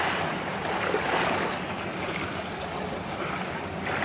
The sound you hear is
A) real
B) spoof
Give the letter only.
A